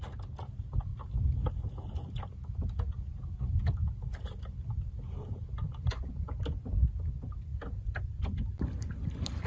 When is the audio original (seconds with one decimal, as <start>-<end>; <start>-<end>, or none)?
0.0-9.5